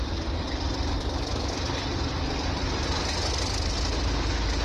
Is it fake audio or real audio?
real